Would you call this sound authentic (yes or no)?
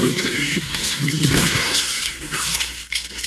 no